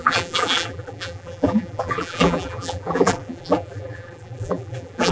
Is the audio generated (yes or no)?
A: yes